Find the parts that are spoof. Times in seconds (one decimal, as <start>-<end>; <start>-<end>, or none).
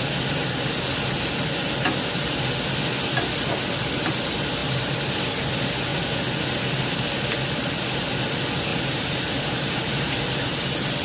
4.6-5.2; 8.7-10.2